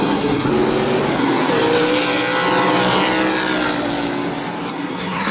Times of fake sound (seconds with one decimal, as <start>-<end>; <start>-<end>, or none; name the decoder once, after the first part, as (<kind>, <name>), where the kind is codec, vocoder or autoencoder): 0.0-0.5 (codec, SNAC); 1.1-1.5; 4.7-5.3